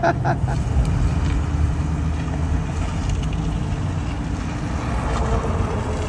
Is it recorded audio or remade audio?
recorded